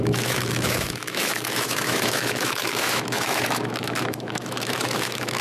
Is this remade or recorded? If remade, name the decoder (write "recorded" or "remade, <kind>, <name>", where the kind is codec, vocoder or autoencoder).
remade, autoencoder, DAC-VAE